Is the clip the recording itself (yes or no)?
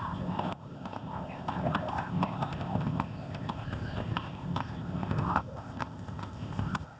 no